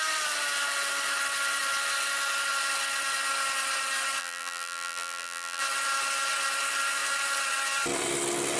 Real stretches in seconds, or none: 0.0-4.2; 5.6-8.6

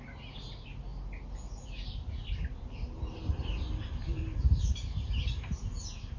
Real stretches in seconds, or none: 0.0-6.2

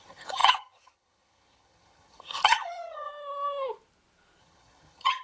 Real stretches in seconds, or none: 3.1-4.4

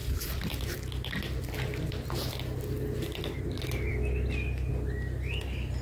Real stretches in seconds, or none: 0.0-5.8

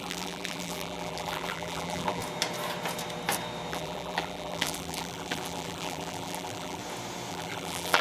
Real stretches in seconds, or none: 2.2-3.7; 6.8-7.3

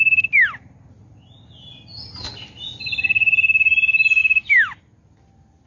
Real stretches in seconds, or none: 0.0-5.7

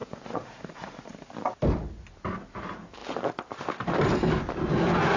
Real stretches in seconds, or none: 1.3-5.2